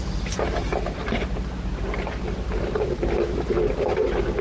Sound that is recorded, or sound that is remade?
recorded